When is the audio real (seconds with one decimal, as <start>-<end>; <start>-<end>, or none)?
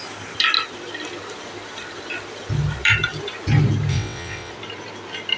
0.0-3.9; 4.5-5.4